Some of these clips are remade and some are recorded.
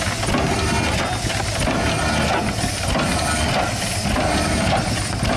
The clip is recorded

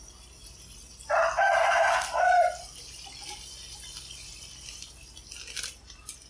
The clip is recorded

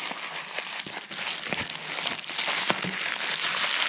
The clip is recorded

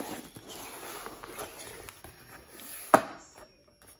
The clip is recorded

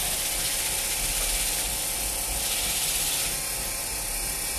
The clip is recorded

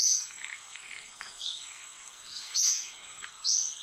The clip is remade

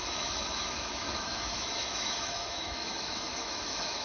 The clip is remade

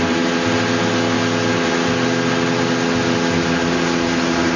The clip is recorded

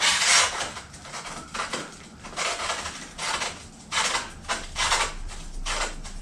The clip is recorded